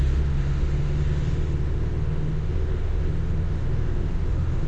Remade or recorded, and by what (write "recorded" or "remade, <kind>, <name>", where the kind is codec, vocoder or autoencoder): remade, autoencoder, DAC-VAE